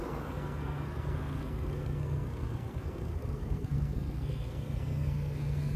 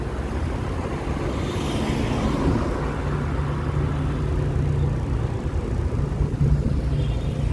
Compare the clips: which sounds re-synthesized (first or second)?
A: first